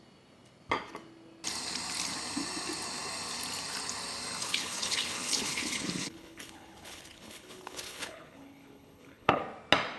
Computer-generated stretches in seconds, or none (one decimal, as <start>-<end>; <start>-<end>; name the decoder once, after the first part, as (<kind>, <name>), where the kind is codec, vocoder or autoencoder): 4.4-9.4 (codec, HILCodec)